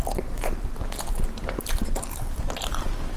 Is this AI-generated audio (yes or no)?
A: yes